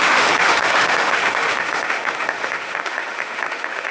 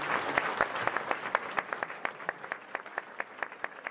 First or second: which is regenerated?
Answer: first